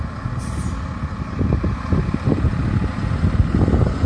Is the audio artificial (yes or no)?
no